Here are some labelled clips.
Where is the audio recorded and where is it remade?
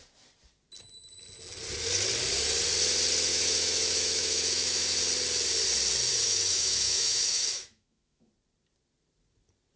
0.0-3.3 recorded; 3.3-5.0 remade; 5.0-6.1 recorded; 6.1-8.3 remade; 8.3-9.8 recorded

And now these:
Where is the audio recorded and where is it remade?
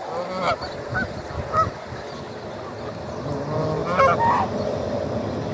0.0-5.5 recorded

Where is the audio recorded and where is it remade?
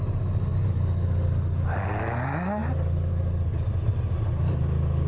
0.0-5.1 recorded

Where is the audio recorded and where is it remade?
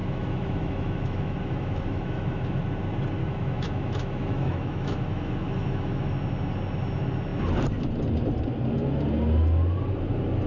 0.0-2.6 remade; 2.6-3.2 recorded; 3.2-6.1 remade; 6.1-10.5 recorded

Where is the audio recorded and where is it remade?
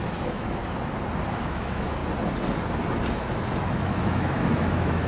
0.0-0.6 remade; 0.6-1.4 recorded; 1.4-2.0 remade; 2.0-3.5 recorded; 3.5-5.1 remade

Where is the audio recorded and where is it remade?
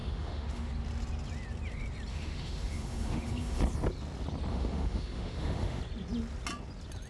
0.0-0.7 remade; 0.7-2.1 recorded; 2.1-3.6 remade; 3.6-4.5 recorded; 4.5-5.8 remade; 5.8-7.1 recorded